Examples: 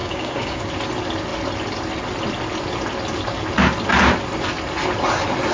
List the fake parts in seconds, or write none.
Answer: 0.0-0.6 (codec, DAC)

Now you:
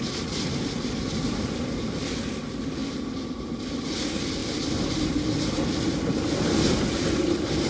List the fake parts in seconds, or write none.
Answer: none

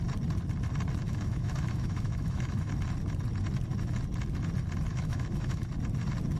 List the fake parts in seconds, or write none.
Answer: 1.0-2.7 (autoencoder, DAC-VAE); 4.9-5.7

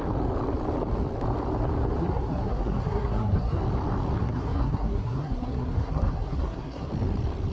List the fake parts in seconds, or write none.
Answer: 2.0-3.6 (codec, SNAC); 4.2-6.9

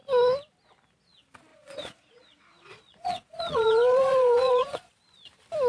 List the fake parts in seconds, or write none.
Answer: 1.5-4.9 (vocoder, Vocos)

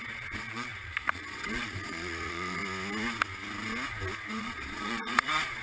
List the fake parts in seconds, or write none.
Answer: 0.0-2.6 (vocoder, Vocos); 4.4-5.6

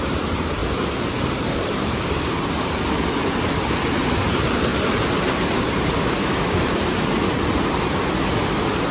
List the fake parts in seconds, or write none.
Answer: 0.6-2.1 (vocoder, BigVGAN v2); 4.7-6.3